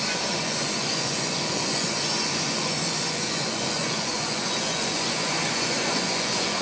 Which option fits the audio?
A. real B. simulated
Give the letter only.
B